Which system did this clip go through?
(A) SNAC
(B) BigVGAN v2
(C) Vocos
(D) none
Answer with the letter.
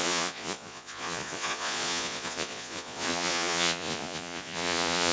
C